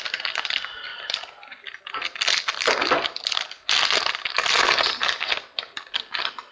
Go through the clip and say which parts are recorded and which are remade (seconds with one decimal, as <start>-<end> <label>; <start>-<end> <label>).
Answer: 0.0-6.5 recorded